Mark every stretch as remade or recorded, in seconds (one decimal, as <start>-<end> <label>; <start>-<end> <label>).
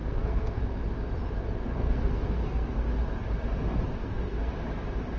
0.0-0.6 remade; 0.6-1.7 recorded; 1.7-2.9 remade; 2.9-4.0 recorded; 4.0-4.5 remade; 4.5-5.2 recorded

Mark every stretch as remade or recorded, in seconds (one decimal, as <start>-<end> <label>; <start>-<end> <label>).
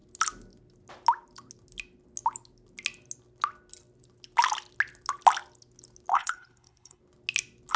0.0-6.1 recorded; 6.1-7.0 remade; 7.0-7.8 recorded